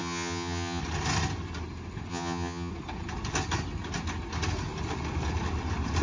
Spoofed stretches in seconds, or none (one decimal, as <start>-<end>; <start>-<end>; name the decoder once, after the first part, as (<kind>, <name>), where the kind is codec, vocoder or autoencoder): 0.0-0.8 (vocoder, HiFi-GAN); 2.1-2.7